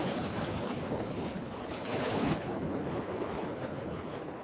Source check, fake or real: fake